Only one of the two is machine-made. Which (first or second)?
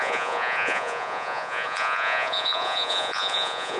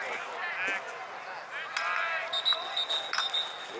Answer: first